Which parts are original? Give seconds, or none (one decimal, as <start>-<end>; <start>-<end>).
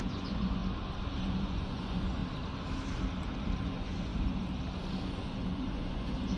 0.6-1.2; 2.2-3.6; 4.1-5.0